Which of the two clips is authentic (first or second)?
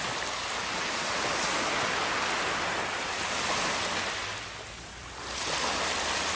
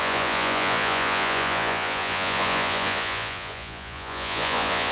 first